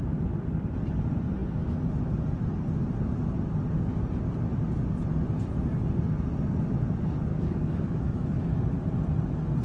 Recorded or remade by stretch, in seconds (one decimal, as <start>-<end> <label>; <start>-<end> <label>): 0.0-7.3 recorded; 7.3-8.4 remade; 8.4-9.6 recorded